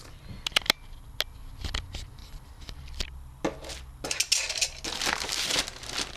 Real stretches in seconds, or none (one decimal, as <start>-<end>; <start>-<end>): 0.0-6.2